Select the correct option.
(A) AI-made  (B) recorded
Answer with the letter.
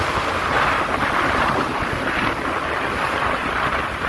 B